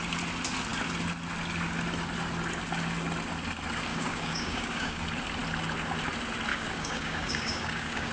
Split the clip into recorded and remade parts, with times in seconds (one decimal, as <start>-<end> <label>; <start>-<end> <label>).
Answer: 0.0-3.9 recorded; 3.9-5.0 remade; 5.0-6.5 recorded; 6.5-8.1 remade

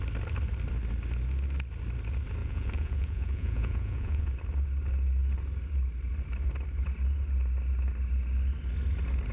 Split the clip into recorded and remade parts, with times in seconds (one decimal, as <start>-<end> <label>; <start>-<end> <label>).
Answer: 0.0-2.4 recorded; 2.4-4.3 remade; 4.3-9.3 recorded

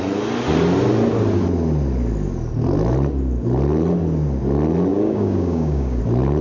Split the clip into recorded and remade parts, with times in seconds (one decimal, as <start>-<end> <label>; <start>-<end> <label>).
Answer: 0.0-4.9 recorded; 4.9-6.0 remade; 6.0-6.4 recorded

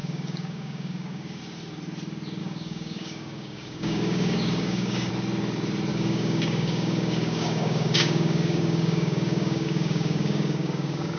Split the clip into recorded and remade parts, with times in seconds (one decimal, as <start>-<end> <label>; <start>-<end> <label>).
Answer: 0.0-1.4 remade; 1.4-2.4 recorded; 2.4-5.1 remade; 5.1-5.9 recorded; 5.9-11.2 remade

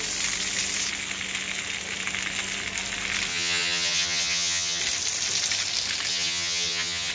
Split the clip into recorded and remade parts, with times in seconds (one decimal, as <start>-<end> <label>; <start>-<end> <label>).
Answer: 0.0-3.3 recorded; 3.3-4.8 remade; 4.8-6.1 recorded; 6.1-7.1 remade

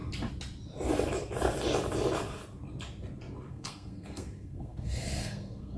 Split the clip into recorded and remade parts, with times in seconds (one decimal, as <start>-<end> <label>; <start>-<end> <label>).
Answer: 0.0-3.5 recorded; 3.5-5.8 remade

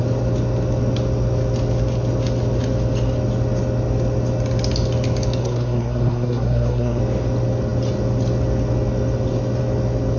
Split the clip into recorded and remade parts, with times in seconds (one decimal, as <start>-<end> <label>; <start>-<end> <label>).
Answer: 0.0-5.4 recorded; 5.4-7.0 remade; 7.0-10.2 recorded

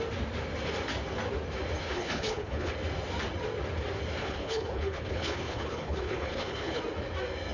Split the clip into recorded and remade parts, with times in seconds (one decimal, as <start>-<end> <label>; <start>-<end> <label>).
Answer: 0.0-1.8 recorded; 1.8-2.7 remade; 2.7-4.2 recorded; 4.2-6.8 remade; 6.8-7.5 recorded